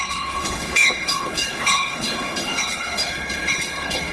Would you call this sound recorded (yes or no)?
no